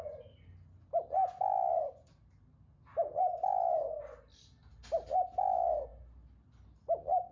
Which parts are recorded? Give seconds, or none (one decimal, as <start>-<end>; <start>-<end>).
0.0-7.3